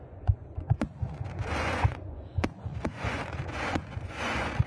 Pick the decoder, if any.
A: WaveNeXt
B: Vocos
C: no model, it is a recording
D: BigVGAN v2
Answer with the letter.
B